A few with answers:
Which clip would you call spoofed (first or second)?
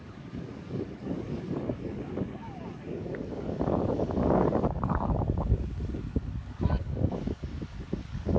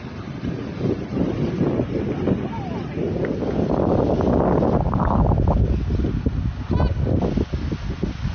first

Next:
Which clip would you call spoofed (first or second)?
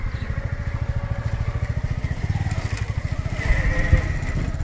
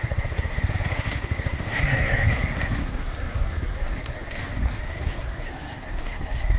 second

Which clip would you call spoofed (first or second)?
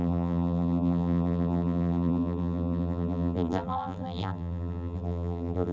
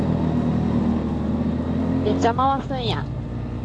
first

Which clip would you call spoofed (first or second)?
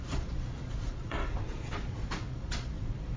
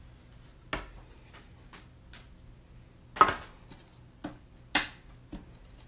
first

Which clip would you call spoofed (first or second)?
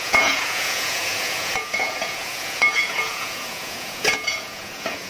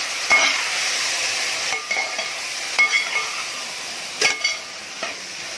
first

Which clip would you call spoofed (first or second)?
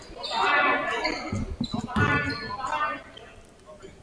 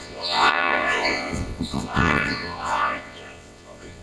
second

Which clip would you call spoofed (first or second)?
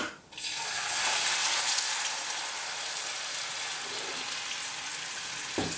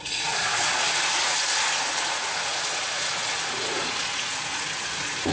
second